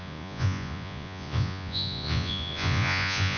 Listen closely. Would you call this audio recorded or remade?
remade